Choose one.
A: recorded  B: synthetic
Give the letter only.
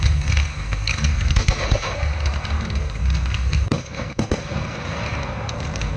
B